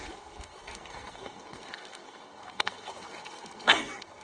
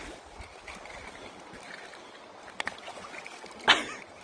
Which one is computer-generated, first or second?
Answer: first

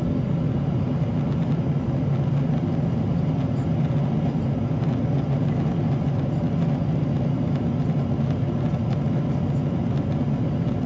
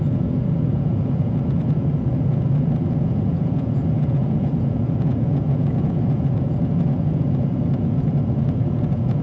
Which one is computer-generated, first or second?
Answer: second